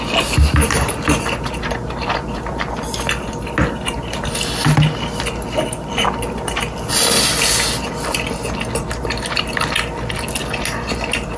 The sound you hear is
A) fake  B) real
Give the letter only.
B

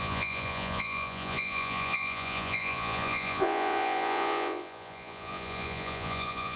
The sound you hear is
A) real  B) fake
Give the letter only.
B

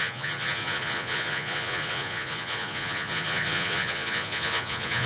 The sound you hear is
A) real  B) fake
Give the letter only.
B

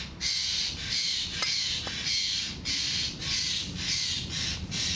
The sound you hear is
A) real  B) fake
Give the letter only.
A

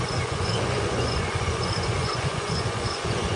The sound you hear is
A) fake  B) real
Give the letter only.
A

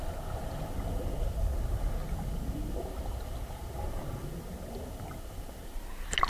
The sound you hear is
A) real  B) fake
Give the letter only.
A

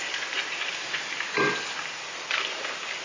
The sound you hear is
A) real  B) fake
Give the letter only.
A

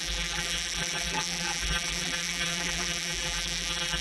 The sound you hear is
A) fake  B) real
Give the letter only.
A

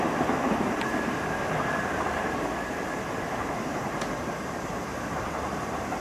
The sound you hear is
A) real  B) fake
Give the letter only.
B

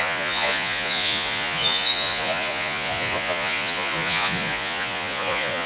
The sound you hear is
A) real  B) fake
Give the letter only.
B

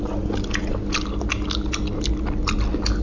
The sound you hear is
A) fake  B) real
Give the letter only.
B